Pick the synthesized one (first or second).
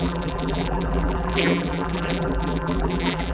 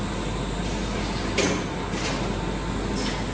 first